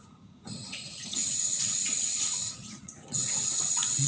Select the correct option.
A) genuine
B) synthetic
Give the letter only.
B